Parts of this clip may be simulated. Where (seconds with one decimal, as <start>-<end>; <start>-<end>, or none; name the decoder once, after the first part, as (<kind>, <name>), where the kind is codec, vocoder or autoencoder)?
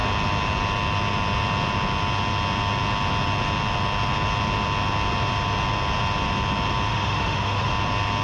6.9-7.7 (autoencoder, DAC-VAE)